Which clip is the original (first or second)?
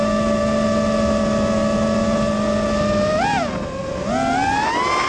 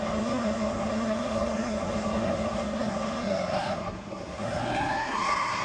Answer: first